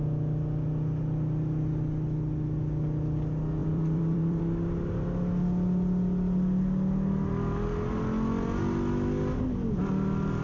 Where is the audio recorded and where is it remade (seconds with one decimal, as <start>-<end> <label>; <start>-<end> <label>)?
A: 0.0-3.6 recorded; 3.6-4.4 remade; 4.4-10.4 recorded